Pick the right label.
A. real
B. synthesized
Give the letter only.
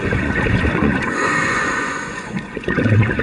B